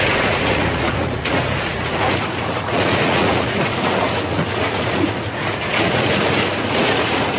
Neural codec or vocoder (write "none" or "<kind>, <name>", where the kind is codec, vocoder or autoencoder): vocoder, Vocos